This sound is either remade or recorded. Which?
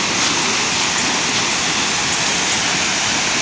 recorded